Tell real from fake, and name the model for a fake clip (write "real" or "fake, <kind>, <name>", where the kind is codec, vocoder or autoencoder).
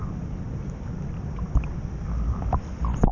real